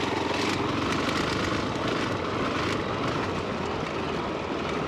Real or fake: real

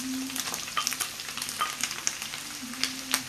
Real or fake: real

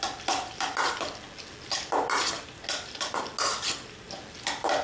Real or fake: real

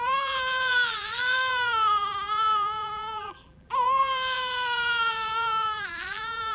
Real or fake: fake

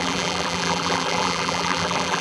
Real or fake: fake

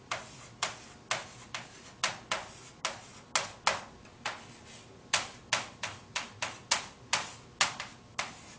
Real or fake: real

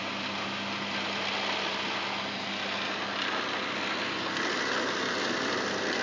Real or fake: real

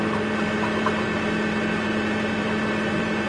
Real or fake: fake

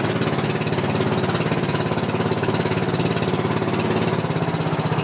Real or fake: real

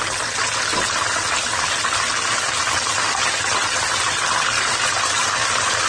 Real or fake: real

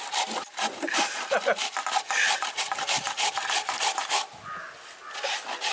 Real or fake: real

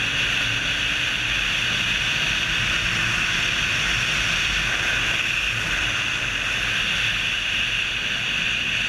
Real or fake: real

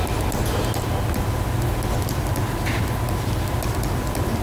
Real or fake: fake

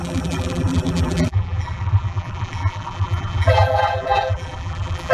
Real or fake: fake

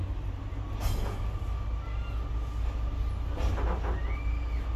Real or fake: real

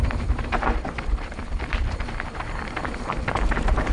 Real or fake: fake